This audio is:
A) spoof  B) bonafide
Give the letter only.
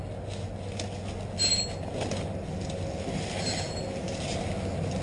B